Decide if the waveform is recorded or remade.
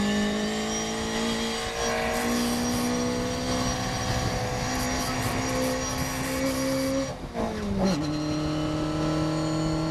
recorded